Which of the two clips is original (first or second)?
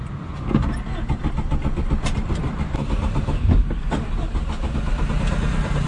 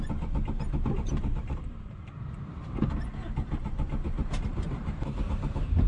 first